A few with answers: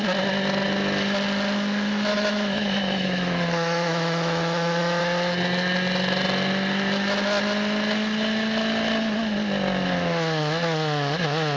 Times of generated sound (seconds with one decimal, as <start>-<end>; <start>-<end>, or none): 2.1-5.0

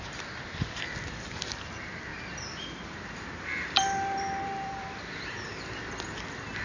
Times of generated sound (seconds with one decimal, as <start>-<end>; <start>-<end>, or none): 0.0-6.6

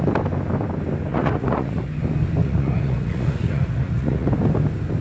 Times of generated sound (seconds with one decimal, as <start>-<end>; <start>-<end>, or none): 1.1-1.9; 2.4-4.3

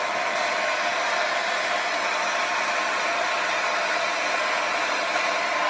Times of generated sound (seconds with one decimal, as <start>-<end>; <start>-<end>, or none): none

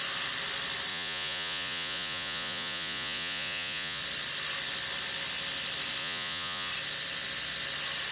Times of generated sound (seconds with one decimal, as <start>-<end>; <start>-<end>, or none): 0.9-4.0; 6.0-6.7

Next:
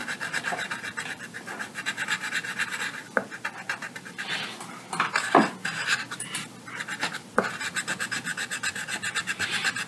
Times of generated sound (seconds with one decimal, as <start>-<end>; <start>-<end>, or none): 0.0-8.3

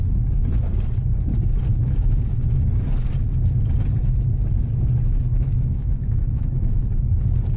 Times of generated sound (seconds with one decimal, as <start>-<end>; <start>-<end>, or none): 1.7-2.2; 5.3-6.8